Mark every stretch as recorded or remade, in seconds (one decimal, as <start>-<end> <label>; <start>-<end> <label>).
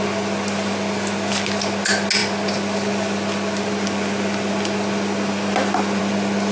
0.0-6.5 recorded